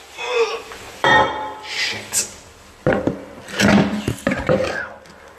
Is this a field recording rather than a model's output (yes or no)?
no